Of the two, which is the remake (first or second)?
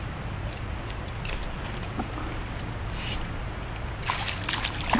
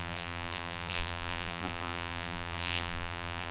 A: second